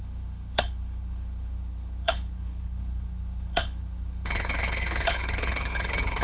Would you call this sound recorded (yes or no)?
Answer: no